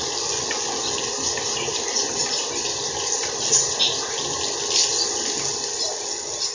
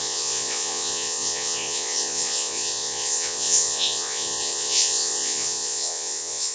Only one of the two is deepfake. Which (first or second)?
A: second